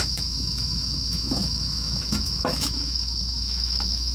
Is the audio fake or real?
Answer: fake